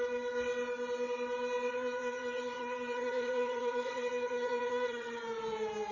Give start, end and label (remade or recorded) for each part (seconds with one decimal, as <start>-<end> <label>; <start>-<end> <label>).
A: 0.0-1.7 recorded; 1.7-5.2 remade; 5.2-5.9 recorded